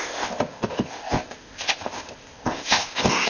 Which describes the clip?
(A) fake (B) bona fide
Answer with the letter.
A